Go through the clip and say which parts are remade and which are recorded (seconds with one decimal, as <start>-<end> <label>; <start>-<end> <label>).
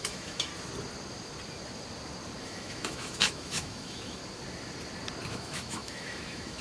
0.0-0.5 remade; 0.5-2.4 recorded; 2.4-4.2 remade; 4.2-5.3 recorded; 5.3-6.6 remade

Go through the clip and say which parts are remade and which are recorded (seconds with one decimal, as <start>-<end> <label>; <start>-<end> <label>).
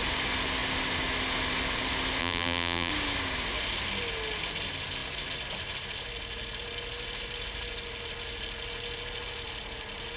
0.0-2.2 recorded; 2.2-2.9 remade; 2.9-10.2 recorded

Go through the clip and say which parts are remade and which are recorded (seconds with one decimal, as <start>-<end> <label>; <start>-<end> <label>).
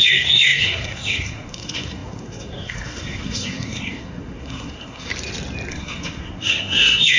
0.0-5.1 remade; 5.1-5.7 recorded; 5.7-7.2 remade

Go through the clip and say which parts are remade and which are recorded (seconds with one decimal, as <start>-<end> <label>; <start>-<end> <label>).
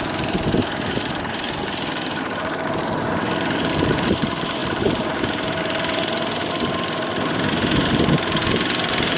0.0-6.4 remade; 6.4-7.5 recorded; 7.5-9.2 remade